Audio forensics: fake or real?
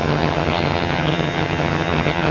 fake